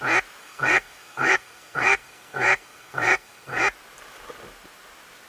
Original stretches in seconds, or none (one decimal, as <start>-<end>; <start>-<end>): 0.0-0.4; 3.6-5.3